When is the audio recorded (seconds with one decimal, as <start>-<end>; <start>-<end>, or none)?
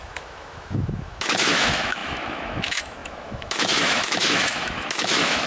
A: none